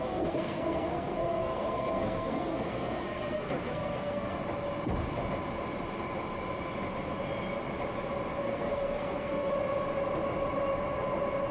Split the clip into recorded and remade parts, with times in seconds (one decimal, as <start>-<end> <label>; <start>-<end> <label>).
0.0-4.4 remade; 4.4-8.4 recorded; 8.4-9.5 remade; 9.5-11.5 recorded